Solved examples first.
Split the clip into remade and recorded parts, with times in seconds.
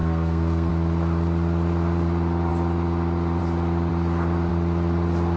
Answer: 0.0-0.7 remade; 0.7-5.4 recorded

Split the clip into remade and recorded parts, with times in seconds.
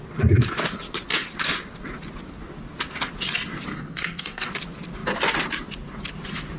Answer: 0.0-3.7 recorded; 3.7-4.5 remade; 4.5-6.6 recorded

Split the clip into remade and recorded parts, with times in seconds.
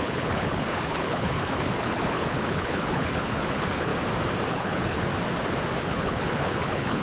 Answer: 0.0-3.9 remade; 3.9-4.5 recorded; 4.5-5.1 remade; 5.1-5.8 recorded; 5.8-7.0 remade